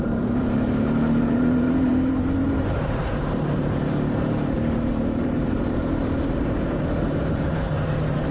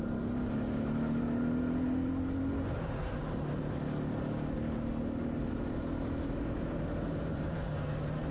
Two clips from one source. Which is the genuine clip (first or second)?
second